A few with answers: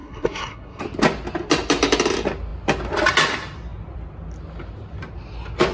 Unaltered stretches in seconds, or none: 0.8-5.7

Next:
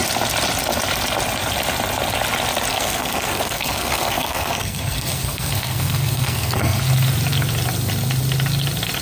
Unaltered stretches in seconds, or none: 0.0-2.7; 6.8-9.0

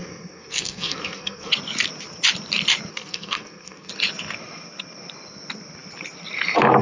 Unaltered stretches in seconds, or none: 1.5-2.9; 3.9-6.8

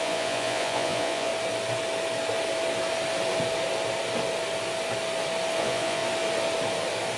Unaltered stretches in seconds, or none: 1.3-5.6; 6.0-7.2

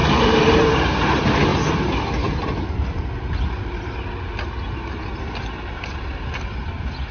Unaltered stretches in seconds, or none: 0.8-7.1

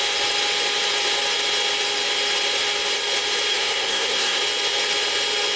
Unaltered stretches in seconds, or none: 0.0-3.5; 4.4-5.6

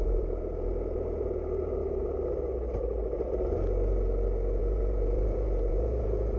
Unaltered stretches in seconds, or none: 1.8-4.6